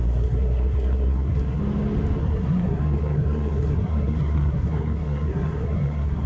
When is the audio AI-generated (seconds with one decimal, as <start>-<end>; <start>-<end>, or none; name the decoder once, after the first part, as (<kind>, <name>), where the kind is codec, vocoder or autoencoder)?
0.0-1.6 (codec, SNAC); 2.2-6.3